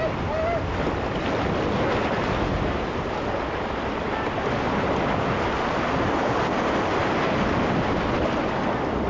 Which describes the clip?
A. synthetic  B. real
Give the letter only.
B